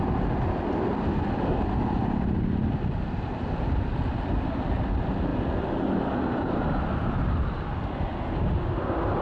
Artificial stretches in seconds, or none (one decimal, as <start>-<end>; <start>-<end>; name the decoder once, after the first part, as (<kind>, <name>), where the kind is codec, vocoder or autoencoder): none